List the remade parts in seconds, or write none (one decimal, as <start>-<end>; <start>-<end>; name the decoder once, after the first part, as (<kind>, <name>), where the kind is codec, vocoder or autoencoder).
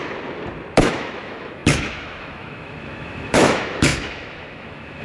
0.8-5.0 (autoencoder, DAC-VAE)